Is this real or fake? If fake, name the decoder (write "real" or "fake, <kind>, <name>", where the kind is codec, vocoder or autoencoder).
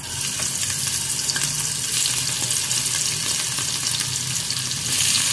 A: real